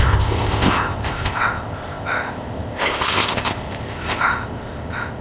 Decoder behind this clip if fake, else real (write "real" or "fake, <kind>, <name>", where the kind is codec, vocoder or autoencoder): fake, codec, ZipCodec